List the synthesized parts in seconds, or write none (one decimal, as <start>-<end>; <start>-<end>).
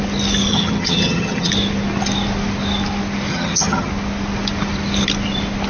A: 0.5-1.5; 3.3-3.9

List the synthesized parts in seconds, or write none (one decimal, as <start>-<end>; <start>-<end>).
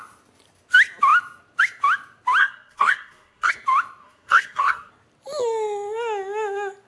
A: 2.4-3.5; 4.0-4.9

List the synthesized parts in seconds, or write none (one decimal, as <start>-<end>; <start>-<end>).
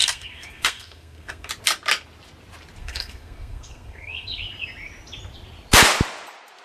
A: 0.0-1.5; 2.8-4.4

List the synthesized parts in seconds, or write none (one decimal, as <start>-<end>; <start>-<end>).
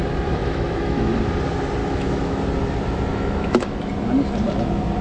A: 0.4-1.1; 1.8-2.4; 3.1-3.9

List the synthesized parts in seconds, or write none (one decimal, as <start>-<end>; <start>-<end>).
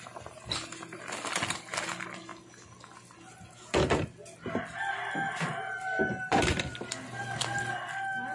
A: none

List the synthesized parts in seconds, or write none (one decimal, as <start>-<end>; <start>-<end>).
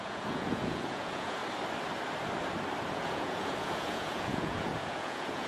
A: 0.0-1.4; 2.9-5.5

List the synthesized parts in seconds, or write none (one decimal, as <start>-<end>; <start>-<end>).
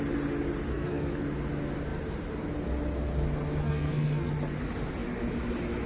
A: 0.7-1.2; 3.6-4.3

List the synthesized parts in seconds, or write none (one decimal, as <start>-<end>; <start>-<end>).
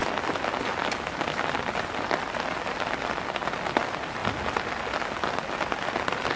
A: none